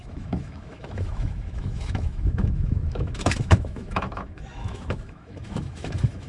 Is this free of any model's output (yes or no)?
no